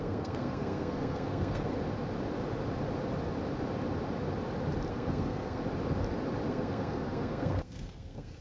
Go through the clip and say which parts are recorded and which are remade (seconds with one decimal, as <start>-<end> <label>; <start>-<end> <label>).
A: 0.0-1.7 remade; 1.7-4.9 recorded; 4.9-5.6 remade; 5.6-6.5 recorded; 6.5-8.4 remade